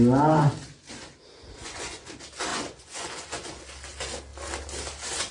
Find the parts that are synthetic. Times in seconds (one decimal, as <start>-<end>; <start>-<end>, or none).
1.6-2.1; 2.5-3.6